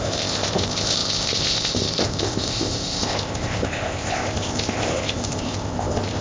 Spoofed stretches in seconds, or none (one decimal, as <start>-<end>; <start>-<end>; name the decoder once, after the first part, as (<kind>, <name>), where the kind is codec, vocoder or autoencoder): 0.0-6.2 (codec, ZipCodec)